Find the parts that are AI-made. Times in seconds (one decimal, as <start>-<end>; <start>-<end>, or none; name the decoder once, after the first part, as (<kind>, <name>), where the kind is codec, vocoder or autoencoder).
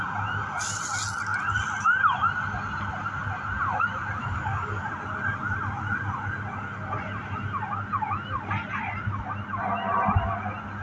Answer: 4.2-4.9 (codec, DAC)